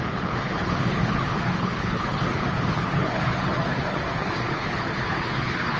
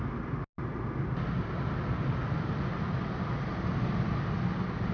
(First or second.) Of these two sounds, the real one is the second